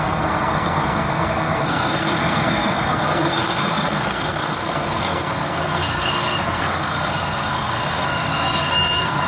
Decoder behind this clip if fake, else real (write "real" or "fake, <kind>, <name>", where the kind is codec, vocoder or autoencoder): fake, codec, SNAC